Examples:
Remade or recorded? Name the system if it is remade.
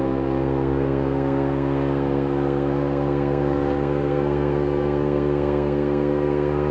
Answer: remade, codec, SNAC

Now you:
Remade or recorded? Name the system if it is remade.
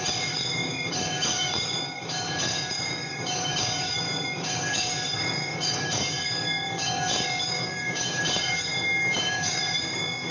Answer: remade, codec, DAC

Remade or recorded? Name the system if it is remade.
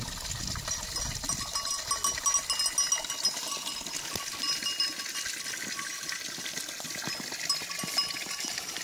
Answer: recorded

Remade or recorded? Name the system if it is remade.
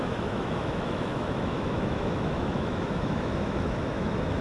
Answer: remade, autoencoder, DAC-VAE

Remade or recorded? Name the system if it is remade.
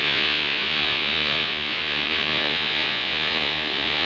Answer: remade, vocoder, Vocos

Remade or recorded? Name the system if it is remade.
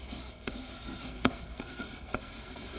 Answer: remade, codec, SNAC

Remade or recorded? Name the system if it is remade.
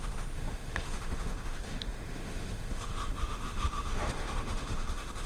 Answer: remade, autoencoder, DAC-VAE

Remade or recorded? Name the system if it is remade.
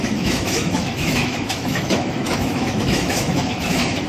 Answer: remade, autoencoder, DAC-VAE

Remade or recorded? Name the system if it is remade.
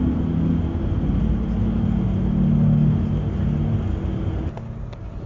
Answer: recorded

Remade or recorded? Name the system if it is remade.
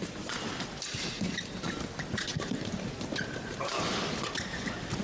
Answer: recorded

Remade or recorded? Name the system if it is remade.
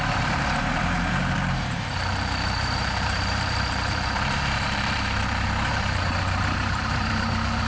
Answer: remade, vocoder, BigVGAN v2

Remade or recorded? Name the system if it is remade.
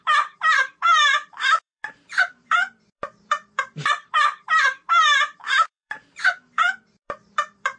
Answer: remade, vocoder, BigVGAN v2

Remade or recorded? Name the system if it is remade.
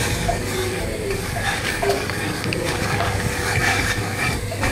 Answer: remade, codec, DAC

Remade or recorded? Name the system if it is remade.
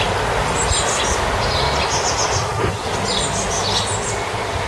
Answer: recorded